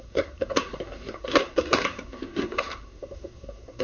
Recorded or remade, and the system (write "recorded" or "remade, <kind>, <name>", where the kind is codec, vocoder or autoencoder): remade, codec, SNAC